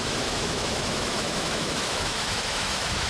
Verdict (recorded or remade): remade